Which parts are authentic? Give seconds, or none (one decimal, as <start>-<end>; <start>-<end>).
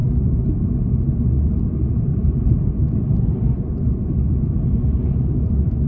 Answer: 0.7-2.1; 5.1-5.9